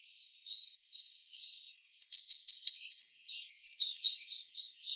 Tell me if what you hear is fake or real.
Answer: fake